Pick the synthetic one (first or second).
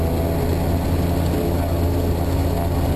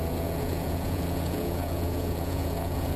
second